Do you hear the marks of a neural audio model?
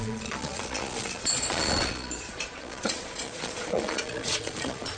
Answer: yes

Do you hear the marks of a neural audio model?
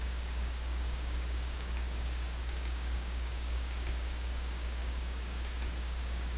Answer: yes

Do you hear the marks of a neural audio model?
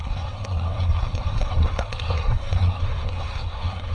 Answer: yes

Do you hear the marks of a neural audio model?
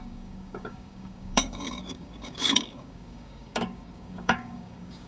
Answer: yes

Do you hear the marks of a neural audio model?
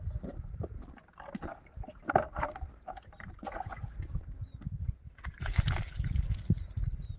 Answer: no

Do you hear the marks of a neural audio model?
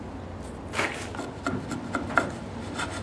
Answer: no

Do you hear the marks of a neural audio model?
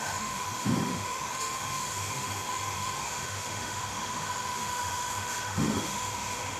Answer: yes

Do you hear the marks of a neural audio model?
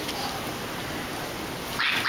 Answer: no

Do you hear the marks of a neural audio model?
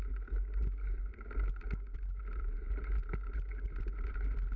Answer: no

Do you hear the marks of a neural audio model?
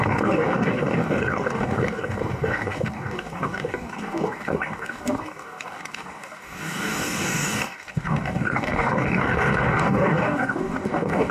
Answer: yes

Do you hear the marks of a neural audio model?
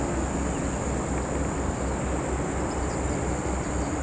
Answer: no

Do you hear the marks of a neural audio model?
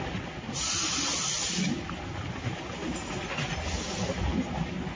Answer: no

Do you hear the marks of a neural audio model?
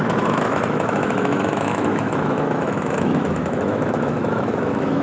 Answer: yes